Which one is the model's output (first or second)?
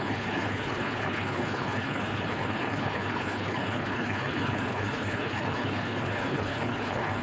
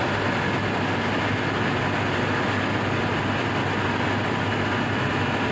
first